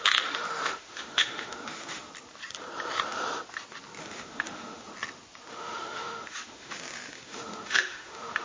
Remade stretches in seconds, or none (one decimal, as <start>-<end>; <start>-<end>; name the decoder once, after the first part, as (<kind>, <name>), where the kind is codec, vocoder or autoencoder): 0.0-2.1 (autoencoder, DAC-VAE); 4.0-4.9; 5.5-8.4